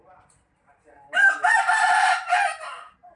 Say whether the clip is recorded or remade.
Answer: recorded